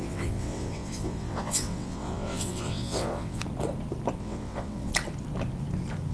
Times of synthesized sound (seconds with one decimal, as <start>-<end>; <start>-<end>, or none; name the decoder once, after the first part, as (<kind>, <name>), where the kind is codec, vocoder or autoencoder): 0.0-3.4 (vocoder, WaveNeXt); 4.2-4.9